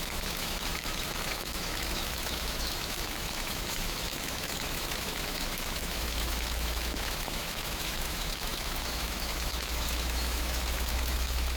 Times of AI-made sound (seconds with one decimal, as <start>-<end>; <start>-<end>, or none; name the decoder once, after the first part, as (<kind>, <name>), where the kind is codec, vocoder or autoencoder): 0.0-11.6 (autoencoder, DAC-VAE)

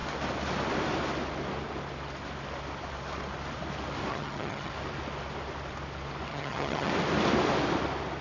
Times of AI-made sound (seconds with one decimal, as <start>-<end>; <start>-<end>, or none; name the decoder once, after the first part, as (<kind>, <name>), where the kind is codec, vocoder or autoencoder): 4.1-4.7 (vocoder, HiFi-GAN); 6.3-6.9

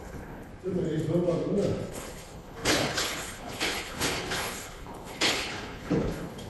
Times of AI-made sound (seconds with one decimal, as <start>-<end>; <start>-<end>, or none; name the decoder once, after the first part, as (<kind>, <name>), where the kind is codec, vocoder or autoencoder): 0.0-0.5 (codec, HILCodec); 1.9-6.5

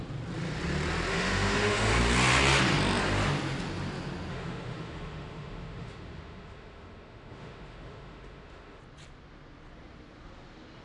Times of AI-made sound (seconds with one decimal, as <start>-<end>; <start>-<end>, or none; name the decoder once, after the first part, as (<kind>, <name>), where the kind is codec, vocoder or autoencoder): 1.1-2.0 (autoencoder, DAC-VAE); 4.3-8.8

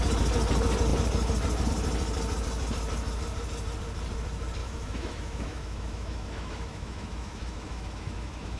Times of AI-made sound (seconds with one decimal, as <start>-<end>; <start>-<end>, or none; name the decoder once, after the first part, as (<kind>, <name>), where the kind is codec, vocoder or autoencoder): 4.6-8.6 (autoencoder, DAC-VAE)

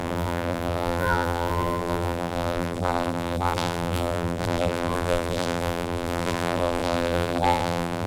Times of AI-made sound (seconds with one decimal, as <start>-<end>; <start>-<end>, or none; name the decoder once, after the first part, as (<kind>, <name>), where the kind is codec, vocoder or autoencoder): 0.0-8.1 (vocoder, BigVGAN v2)

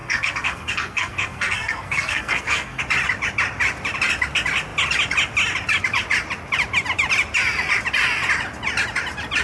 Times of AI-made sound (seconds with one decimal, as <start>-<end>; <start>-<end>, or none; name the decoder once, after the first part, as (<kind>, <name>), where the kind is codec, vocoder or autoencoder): 0.0-2.8 (codec, SNAC)